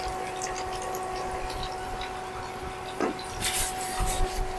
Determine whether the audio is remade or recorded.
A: recorded